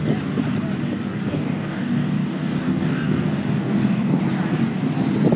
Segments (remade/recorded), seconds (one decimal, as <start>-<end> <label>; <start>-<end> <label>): 0.0-1.3 recorded; 1.3-4.2 remade; 4.2-5.4 recorded